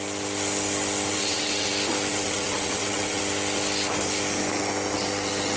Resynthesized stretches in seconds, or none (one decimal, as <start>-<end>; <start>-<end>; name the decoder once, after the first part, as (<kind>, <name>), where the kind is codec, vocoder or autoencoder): 1.1-1.7 (vocoder, WaveNeXt); 2.1-3.2